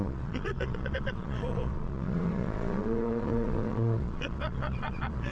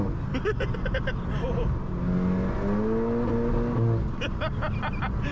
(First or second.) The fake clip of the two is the first